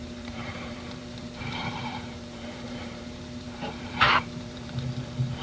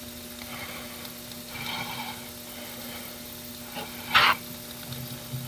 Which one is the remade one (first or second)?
first